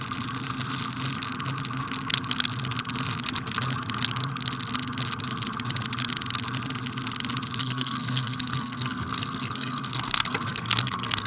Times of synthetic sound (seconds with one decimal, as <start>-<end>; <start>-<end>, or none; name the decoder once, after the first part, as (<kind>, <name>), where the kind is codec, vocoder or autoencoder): 7.6-11.3 (codec, SNAC)